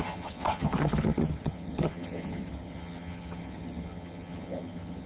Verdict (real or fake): fake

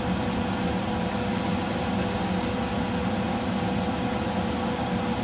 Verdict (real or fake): real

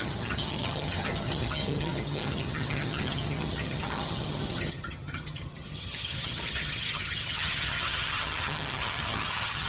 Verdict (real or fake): fake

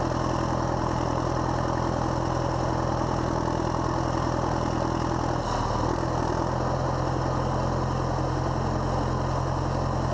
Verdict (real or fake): real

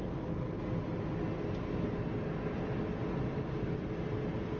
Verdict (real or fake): real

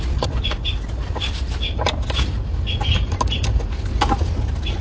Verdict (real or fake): real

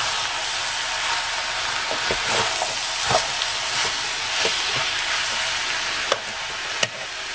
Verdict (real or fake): real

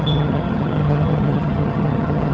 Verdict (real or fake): fake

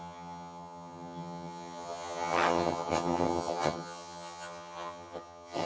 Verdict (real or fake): fake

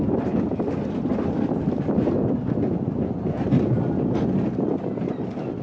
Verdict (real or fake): real